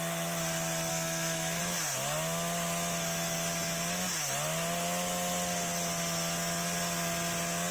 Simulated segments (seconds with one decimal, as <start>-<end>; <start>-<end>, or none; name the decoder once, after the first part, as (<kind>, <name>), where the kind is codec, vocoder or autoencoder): 0.9-1.6 (codec, SNAC)